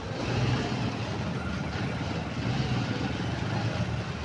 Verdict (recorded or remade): recorded